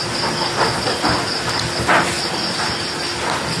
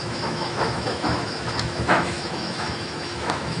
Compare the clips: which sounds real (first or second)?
first